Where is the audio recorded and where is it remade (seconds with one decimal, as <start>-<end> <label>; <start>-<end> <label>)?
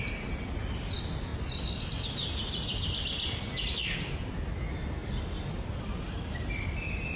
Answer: 0.0-7.2 recorded